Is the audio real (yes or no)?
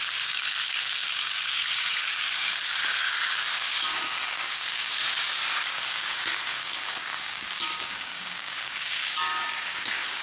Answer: no